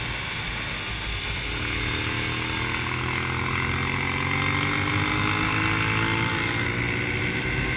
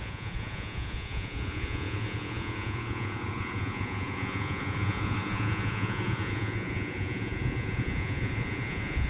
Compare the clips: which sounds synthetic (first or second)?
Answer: second